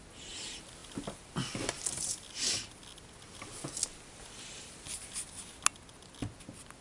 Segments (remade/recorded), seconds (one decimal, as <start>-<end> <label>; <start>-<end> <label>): 0.0-6.8 recorded